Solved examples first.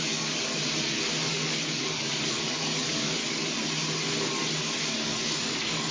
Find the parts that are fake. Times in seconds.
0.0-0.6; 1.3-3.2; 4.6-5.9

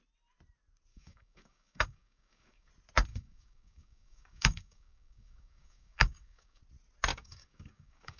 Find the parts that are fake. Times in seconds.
0.9-2.7; 3.1-6.6; 7.1-8.2

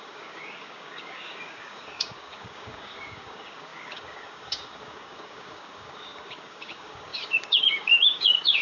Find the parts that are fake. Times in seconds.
0.0-8.6

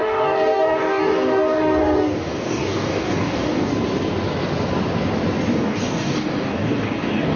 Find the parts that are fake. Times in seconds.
0.0-3.7; 5.5-7.4

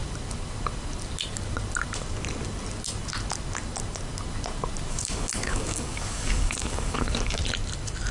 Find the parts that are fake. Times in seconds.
4.9-7.4